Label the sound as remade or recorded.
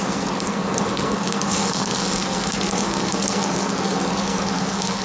remade